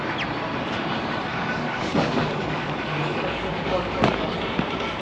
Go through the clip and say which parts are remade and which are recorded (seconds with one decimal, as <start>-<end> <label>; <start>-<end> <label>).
0.0-1.3 recorded; 1.3-4.3 remade; 4.3-5.0 recorded